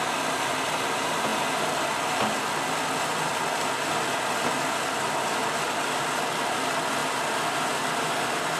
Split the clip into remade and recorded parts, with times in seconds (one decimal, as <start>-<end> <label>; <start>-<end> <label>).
0.0-8.6 recorded